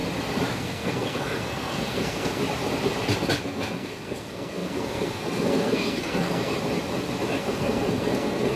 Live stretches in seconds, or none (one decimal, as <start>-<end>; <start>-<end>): 0.0-0.5; 2.4-3.4; 6.5-7.4